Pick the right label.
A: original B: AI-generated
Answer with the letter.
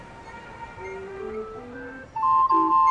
A